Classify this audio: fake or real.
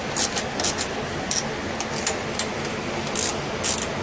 real